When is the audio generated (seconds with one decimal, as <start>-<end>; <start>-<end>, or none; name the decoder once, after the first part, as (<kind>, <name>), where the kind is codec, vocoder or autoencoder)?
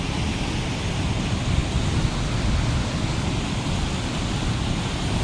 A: none